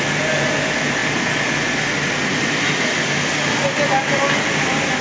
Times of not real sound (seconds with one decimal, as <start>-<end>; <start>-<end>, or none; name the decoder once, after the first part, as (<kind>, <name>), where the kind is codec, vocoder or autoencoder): none